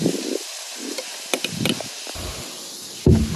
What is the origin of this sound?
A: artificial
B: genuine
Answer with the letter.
B